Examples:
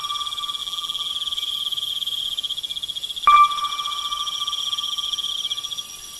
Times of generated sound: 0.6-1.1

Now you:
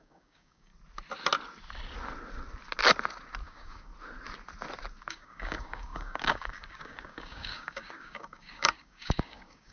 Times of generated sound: 0.0-0.7; 3.4-3.9; 5.1-9.7

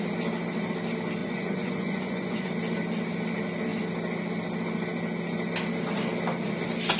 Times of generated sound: 1.2-2.5

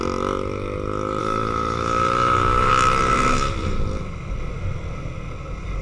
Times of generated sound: 1.2-2.7

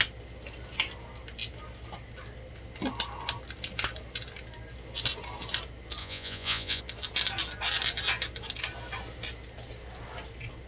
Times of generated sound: 6.0-6.8

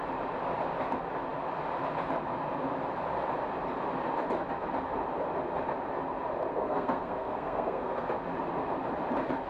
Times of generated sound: 6.5-8.1

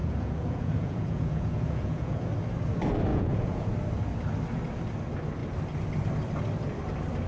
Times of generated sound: 0.0-2.3; 3.1-3.7